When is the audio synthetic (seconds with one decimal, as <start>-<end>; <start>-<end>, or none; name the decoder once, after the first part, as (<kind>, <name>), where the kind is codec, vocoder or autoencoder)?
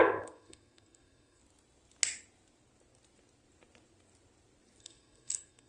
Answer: 0.0-1.4 (codec, SNAC); 4.8-5.7